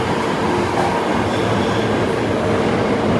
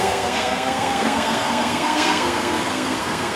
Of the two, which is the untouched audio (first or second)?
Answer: first